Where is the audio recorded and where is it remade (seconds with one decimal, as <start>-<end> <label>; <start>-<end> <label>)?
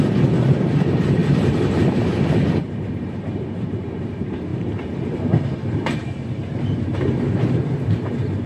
0.0-8.5 remade